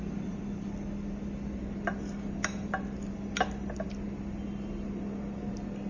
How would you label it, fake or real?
real